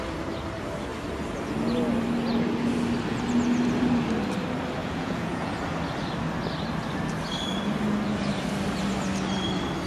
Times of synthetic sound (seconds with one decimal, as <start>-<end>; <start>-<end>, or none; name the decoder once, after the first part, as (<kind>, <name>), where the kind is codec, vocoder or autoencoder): 4.8-5.5 (vocoder, Vocos)